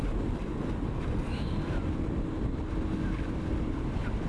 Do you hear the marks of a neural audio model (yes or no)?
no